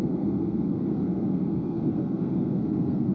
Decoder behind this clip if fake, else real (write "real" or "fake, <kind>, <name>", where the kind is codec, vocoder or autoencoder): fake, codec, SNAC